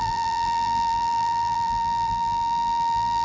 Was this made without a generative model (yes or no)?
no